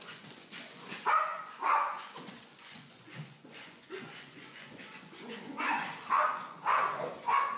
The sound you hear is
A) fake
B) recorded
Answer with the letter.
A